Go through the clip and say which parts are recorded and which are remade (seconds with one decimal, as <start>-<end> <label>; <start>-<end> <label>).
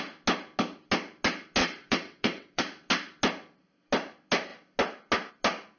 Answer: 0.0-1.6 recorded; 1.6-2.6 remade; 2.6-5.8 recorded